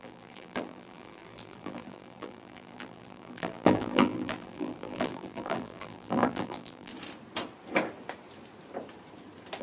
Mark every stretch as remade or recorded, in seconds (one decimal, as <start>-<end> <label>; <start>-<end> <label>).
0.0-6.9 remade; 6.9-9.6 recorded